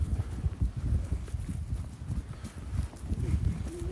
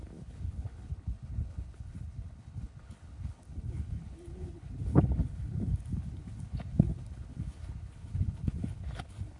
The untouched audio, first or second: first